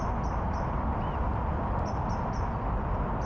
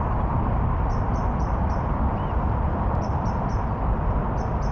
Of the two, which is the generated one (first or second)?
second